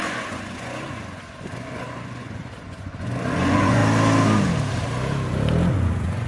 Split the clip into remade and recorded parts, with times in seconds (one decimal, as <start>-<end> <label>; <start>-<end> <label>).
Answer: 0.0-3.8 remade; 3.8-5.7 recorded; 5.7-6.3 remade